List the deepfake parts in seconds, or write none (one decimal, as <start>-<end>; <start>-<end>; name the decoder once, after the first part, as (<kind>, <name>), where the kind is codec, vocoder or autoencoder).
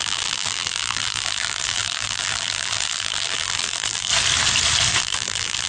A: 0.0-4.1 (vocoder, BigVGAN v2); 5.0-5.7